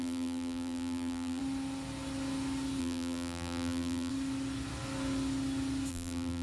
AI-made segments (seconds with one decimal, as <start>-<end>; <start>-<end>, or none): 0.0-1.4; 2.8-4.1; 5.9-6.4